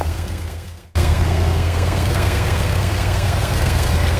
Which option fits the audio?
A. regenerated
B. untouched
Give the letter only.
A